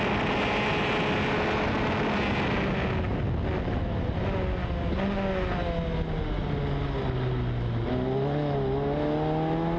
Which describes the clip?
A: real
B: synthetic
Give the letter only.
A